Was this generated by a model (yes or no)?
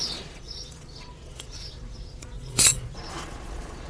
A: yes